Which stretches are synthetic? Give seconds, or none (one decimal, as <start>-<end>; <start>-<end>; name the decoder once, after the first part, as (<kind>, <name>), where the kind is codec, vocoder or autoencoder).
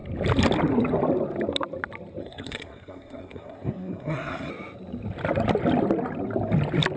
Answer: 2.2-4.5 (codec, SNAC)